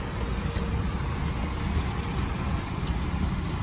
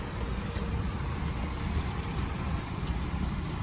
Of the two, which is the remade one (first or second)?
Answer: second